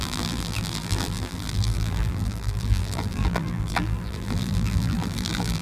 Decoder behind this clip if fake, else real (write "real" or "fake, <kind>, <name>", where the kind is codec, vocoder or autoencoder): fake, vocoder, BigVGAN v2